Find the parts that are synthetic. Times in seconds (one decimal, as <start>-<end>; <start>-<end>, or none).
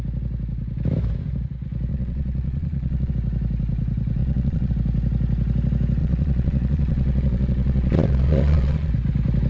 1.9-3.1; 4.2-4.7; 6.0-8.9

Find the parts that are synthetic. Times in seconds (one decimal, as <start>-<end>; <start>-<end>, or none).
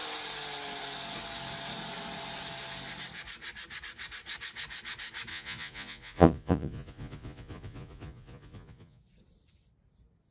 5.3-9.0